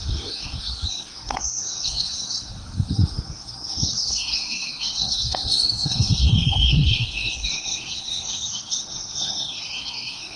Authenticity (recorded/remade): remade